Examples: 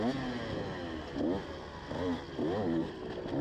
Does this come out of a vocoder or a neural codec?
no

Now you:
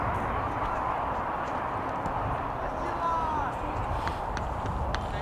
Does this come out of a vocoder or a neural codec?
no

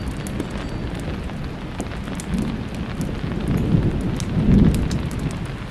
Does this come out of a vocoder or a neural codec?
no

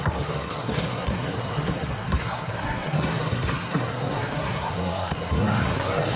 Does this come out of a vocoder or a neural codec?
yes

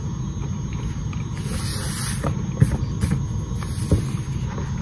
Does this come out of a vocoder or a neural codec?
no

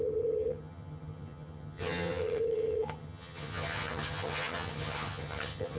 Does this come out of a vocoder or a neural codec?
yes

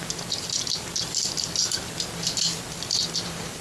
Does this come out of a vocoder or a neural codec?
no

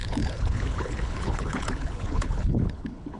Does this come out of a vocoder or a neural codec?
yes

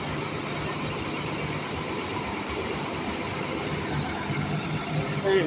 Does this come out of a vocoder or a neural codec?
no